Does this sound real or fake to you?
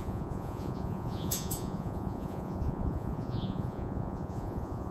fake